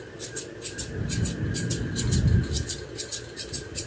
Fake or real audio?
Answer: real